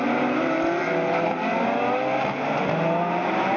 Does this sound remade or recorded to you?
recorded